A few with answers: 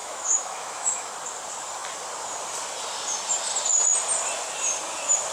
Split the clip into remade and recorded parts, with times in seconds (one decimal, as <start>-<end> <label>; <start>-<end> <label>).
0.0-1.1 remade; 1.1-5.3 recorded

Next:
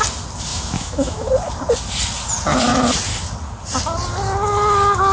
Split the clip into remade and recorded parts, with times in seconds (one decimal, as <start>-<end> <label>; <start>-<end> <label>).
0.0-0.5 recorded; 0.5-1.3 remade; 1.3-5.1 recorded

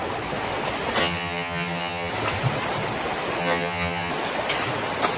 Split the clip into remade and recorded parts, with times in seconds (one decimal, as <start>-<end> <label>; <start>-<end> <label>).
0.0-1.0 recorded; 1.0-2.1 remade; 2.1-3.4 recorded; 3.4-4.1 remade; 4.1-5.2 recorded